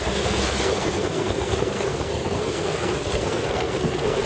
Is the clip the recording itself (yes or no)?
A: no